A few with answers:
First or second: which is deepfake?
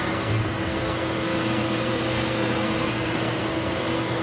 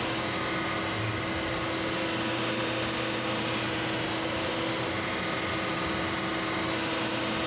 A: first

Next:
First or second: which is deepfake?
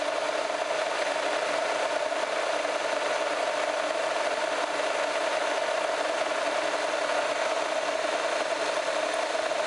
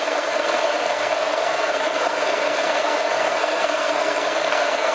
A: second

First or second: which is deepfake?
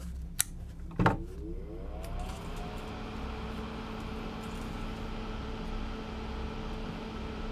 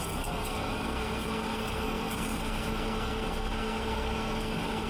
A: second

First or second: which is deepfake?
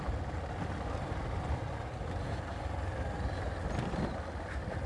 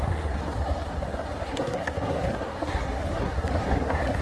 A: second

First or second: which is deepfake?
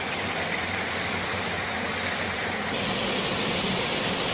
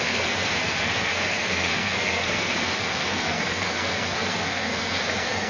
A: second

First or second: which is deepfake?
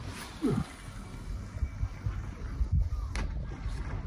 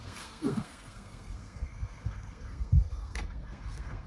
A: second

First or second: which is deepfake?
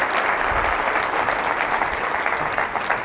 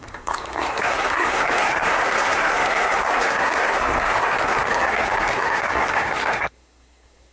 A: second